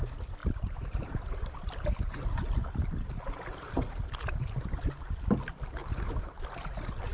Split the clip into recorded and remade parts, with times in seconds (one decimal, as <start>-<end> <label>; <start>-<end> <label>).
0.0-0.4 recorded; 0.4-1.1 remade; 1.1-5.8 recorded; 5.8-6.4 remade; 6.4-7.1 recorded

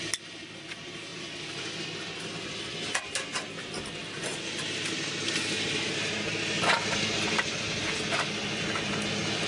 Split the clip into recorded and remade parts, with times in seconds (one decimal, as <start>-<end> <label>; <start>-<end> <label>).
0.0-9.5 recorded

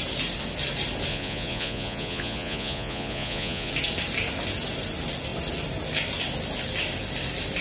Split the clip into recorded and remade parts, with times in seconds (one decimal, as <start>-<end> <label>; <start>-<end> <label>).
0.0-1.1 recorded; 1.1-3.7 remade; 3.7-7.6 recorded

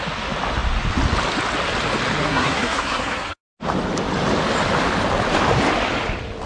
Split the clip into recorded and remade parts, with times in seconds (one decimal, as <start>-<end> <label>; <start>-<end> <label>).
0.0-2.2 recorded; 2.2-3.4 remade; 3.4-6.5 recorded